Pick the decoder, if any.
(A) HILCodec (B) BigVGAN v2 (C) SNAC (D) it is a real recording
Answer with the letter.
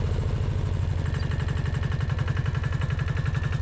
D